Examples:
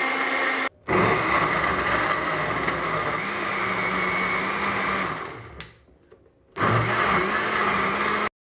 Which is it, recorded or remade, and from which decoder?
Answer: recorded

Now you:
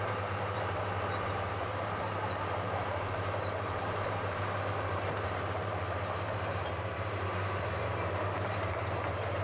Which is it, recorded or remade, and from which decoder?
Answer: remade, vocoder, BigVGAN v2